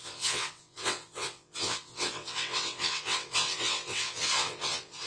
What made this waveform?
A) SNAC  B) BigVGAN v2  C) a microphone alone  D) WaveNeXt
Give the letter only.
D